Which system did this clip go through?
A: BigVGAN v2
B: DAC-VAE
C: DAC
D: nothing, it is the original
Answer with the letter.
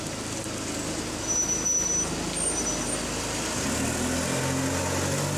D